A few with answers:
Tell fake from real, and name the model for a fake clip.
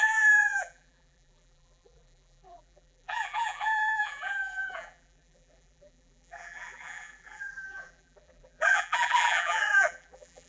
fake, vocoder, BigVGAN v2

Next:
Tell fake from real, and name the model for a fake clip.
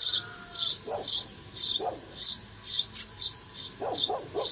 real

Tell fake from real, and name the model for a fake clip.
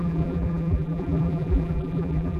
fake, vocoder, BigVGAN v2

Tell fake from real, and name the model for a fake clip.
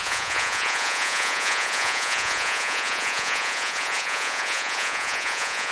fake, vocoder, Vocos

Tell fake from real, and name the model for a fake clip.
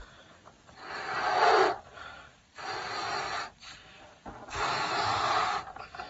real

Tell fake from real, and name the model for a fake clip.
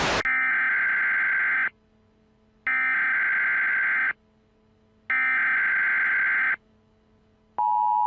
real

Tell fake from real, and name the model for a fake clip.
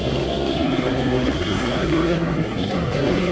fake, codec, SNAC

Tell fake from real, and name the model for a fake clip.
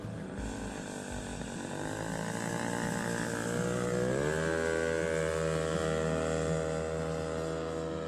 real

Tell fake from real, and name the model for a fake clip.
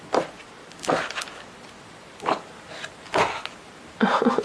real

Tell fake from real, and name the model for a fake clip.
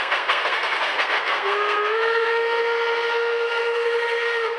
fake, codec, SNAC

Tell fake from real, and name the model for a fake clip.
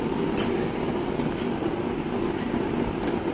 real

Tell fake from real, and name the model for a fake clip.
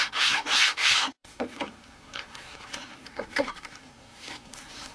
fake, codec, SNAC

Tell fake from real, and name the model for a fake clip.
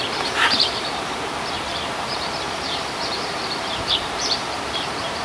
fake, vocoder, BigVGAN v2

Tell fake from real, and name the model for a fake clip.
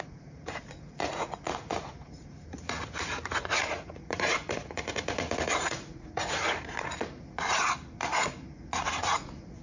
fake, vocoder, Vocos